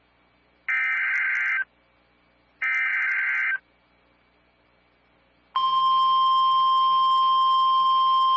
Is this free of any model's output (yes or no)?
yes